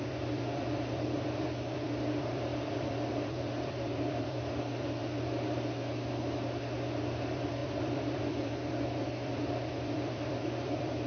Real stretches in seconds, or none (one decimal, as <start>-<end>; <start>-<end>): 5.0-7.0